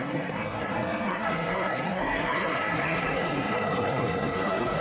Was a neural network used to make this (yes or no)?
yes